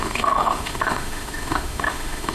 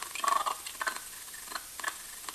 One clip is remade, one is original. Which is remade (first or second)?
first